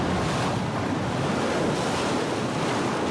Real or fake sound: real